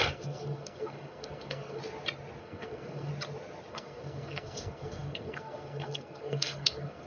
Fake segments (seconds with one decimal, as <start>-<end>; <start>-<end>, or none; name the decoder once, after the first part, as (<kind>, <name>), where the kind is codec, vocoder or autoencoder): 0.0-1.8 (codec, SNAC); 2.4-3.1; 3.7-7.1